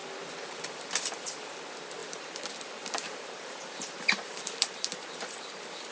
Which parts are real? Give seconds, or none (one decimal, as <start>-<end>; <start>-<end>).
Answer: 0.0-2.0; 5.1-5.9

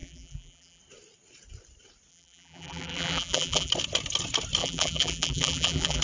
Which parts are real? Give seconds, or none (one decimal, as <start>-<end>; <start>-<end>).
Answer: 0.8-2.1; 3.7-4.6

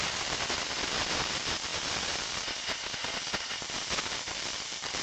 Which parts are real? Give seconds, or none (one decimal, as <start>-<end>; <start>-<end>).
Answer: 1.7-4.1

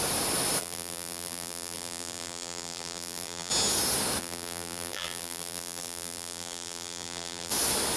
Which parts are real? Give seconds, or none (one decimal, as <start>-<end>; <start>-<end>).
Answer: 0.0-0.6; 3.5-4.2; 7.5-8.0

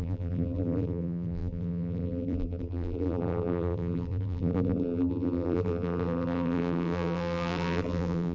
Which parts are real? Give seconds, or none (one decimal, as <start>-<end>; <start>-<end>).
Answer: none

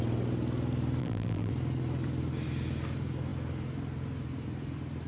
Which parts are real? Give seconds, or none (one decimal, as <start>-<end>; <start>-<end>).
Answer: 0.0-1.0; 1.5-5.1

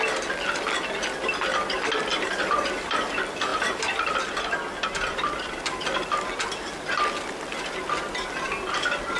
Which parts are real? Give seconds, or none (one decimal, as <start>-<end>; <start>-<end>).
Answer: 0.0-2.1; 2.9-3.5; 4.4-9.2